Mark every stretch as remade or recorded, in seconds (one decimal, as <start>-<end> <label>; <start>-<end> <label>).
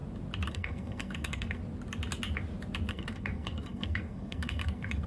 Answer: 0.0-0.5 recorded; 0.5-1.6 remade; 1.6-2.9 recorded; 2.9-5.1 remade